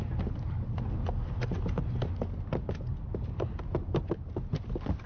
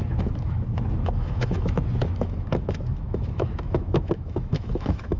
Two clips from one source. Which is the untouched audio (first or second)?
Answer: first